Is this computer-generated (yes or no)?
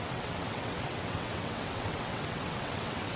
yes